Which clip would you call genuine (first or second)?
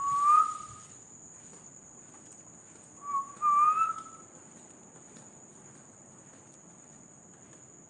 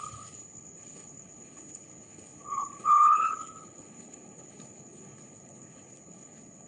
first